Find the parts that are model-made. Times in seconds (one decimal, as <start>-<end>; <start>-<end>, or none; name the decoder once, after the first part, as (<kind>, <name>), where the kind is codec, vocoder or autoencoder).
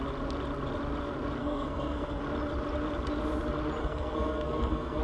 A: 1.4-2.2 (codec, SNAC); 3.8-5.0